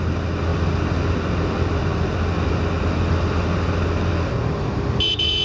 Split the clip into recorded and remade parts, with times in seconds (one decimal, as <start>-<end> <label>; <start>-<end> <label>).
0.0-5.4 recorded